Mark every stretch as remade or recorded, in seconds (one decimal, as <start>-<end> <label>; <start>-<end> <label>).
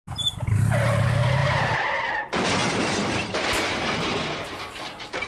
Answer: 0.0-1.4 recorded; 1.4-1.9 remade; 1.9-2.6 recorded; 2.6-4.3 remade; 4.3-5.3 recorded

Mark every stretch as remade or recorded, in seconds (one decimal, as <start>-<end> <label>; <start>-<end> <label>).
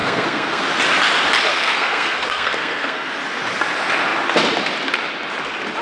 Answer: 0.0-0.6 remade; 0.6-1.5 recorded; 1.5-3.1 remade; 3.1-5.8 recorded